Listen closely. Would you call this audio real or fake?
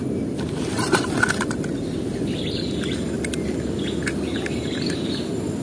real